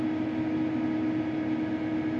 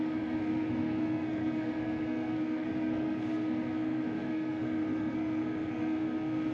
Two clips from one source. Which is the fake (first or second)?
second